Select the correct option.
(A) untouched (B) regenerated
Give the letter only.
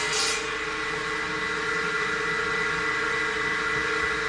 A